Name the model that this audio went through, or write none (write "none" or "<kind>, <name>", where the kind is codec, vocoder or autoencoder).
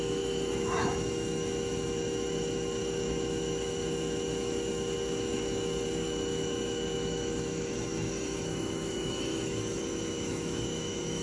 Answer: autoencoder, DAC-VAE